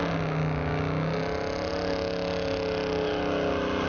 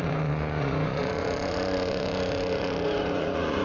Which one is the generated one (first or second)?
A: second